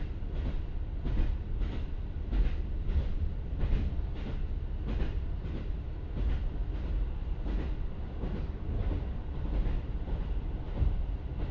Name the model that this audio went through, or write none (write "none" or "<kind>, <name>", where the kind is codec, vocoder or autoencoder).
none